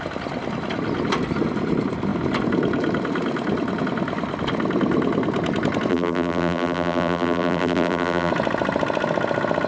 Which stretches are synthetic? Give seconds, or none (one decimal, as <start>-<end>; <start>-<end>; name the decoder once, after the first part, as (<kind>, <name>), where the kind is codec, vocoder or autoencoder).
5.9-8.3 (vocoder, BigVGAN v2)